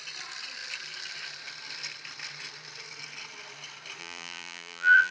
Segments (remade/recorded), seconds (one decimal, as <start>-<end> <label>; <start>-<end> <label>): 0.0-4.0 recorded; 4.0-5.1 remade